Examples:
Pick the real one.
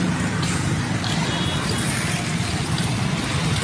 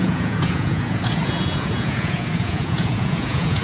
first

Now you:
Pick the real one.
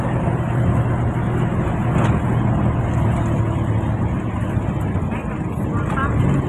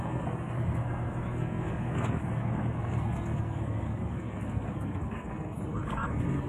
first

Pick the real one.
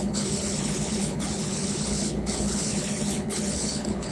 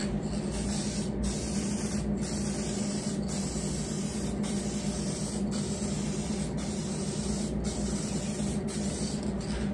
second